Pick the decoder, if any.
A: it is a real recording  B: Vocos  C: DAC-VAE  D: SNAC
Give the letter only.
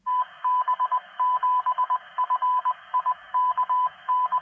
C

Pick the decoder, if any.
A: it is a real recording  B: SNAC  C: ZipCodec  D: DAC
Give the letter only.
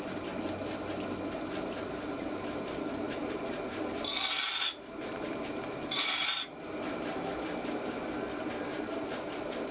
A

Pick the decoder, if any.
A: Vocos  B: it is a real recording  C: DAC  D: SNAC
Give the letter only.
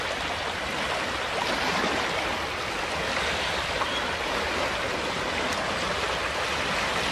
B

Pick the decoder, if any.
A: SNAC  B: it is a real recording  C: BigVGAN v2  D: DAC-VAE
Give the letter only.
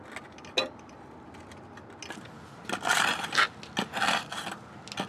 B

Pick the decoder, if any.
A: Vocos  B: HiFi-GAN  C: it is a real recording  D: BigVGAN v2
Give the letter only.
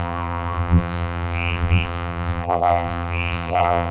D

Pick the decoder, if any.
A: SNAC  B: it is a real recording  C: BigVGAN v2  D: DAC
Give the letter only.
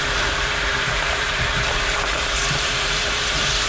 C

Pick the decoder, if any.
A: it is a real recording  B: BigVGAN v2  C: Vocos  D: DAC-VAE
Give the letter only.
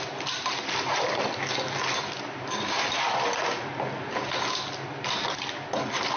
A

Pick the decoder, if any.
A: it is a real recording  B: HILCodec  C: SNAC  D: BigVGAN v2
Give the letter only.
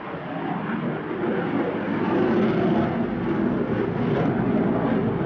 A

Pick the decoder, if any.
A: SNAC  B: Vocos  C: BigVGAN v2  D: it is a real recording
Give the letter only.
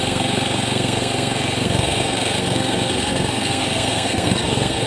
A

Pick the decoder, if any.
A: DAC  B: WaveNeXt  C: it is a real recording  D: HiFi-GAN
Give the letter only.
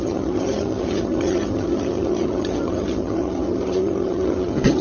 D